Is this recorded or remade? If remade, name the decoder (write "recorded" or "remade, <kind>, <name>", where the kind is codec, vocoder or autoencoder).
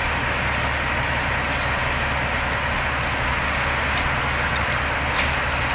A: recorded